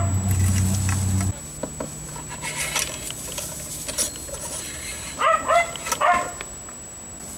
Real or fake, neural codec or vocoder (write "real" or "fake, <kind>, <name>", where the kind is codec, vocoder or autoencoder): real